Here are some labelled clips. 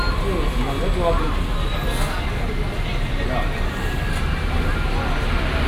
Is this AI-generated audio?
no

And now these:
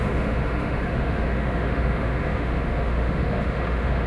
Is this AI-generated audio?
yes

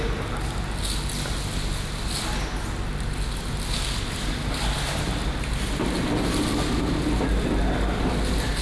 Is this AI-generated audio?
no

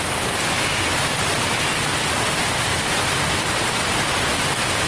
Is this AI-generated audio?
no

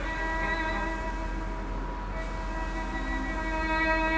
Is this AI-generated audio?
no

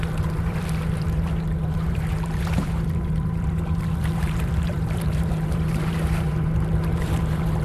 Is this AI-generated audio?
yes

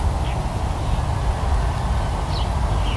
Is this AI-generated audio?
no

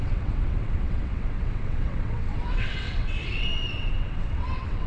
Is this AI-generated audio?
yes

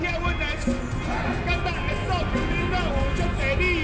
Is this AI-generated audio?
no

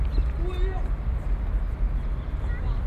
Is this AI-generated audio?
no